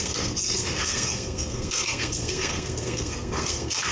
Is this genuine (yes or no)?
no